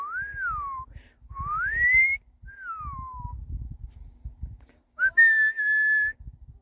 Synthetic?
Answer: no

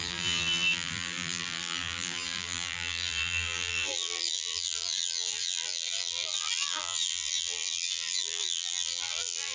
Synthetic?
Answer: yes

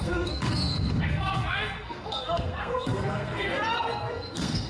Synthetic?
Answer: yes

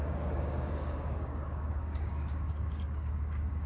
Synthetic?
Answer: yes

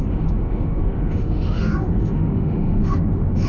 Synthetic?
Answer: yes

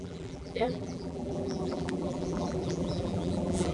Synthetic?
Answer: yes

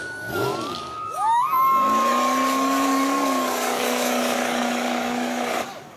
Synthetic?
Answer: yes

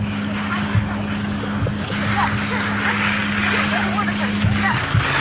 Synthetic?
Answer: yes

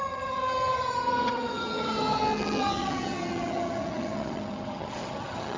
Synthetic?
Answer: yes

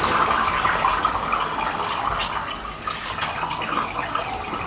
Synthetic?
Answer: no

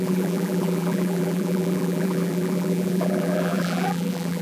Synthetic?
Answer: yes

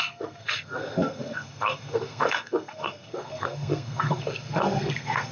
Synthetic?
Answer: yes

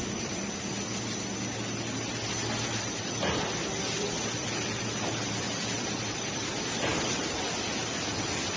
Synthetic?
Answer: no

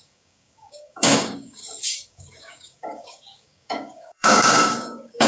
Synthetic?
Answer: yes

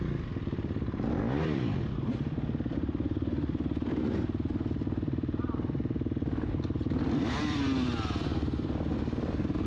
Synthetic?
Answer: yes